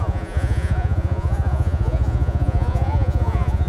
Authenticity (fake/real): fake